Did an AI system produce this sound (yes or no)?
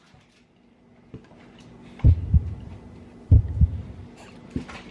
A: yes